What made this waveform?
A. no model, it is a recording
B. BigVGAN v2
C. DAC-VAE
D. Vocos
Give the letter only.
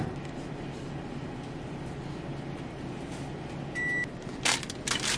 A